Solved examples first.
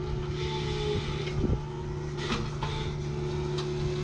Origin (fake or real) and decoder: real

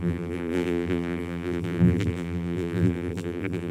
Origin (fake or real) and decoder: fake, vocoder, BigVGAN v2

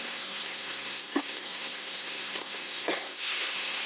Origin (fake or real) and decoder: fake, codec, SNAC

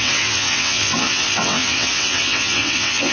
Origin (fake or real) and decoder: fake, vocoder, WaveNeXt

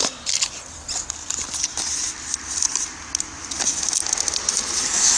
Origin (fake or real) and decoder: real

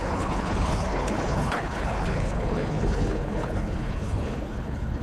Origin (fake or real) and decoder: fake, codec, HILCodec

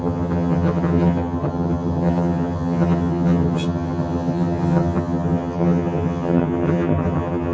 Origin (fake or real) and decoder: fake, vocoder, HiFi-GAN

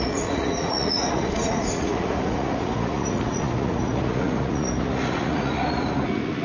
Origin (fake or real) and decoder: fake, vocoder, Vocos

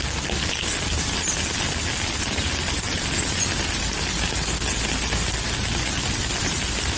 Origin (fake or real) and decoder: real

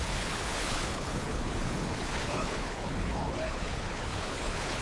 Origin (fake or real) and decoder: fake, codec, HILCodec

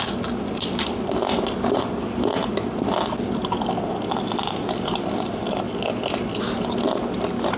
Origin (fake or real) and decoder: real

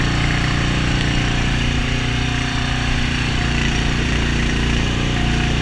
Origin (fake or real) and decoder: fake, vocoder, BigVGAN v2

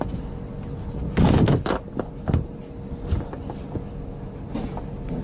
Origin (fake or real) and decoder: real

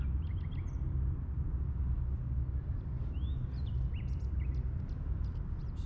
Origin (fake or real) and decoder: real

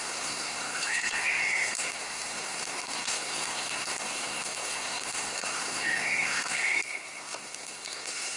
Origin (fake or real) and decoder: fake, codec, SNAC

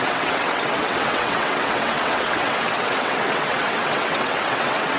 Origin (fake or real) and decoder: fake, vocoder, WaveNeXt